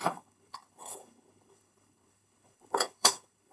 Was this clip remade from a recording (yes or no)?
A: yes